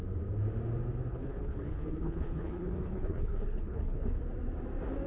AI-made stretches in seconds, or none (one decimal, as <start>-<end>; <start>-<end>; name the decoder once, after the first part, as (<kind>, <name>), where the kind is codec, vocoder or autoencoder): 1.1-4.2 (codec, HILCodec)